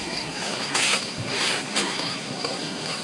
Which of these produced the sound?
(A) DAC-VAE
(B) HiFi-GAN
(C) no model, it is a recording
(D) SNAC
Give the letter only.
D